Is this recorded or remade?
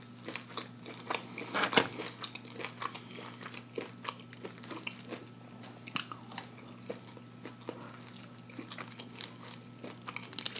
recorded